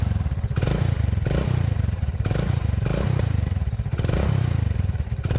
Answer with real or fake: fake